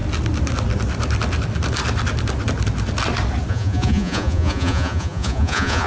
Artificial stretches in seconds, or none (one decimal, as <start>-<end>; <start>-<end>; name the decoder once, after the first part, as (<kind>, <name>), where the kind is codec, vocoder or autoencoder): 3.5-5.9 (vocoder, Vocos)

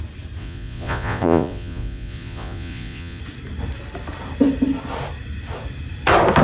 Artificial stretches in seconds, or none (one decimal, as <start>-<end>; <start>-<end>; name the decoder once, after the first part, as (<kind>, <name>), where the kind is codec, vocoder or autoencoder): 0.4-3.2 (vocoder, Vocos)

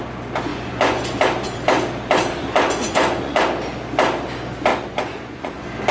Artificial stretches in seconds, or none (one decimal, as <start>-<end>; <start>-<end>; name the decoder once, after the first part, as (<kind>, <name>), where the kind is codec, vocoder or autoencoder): 0.5-1.2 (vocoder, Vocos); 2.4-3.4; 4.7-5.5

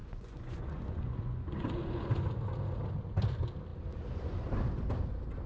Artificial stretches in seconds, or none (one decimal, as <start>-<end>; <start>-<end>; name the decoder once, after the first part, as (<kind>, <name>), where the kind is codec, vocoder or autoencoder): 0.0-2.1 (vocoder, Vocos)

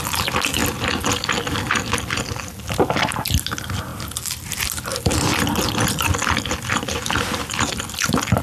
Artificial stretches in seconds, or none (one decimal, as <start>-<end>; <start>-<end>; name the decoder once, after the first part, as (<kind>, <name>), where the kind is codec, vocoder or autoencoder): none